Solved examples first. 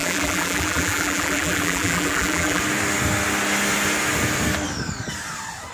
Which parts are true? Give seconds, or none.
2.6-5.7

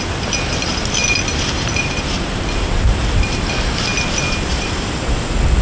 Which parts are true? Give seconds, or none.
0.0-1.3; 3.4-3.9; 5.1-5.6

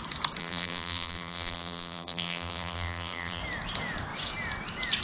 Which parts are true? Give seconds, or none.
0.0-0.4; 3.4-5.0

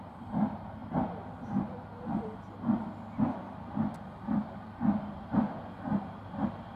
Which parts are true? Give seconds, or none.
0.0-6.8

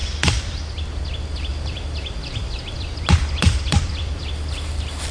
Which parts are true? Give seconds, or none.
0.6-1.5; 4.2-5.1